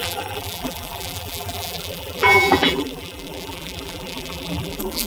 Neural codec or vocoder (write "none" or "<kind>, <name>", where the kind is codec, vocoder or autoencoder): vocoder, BigVGAN v2